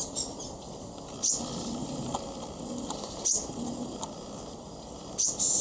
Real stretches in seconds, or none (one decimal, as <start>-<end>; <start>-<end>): 0.0-5.6